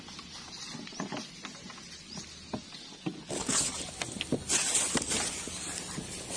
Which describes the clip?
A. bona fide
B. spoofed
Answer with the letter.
A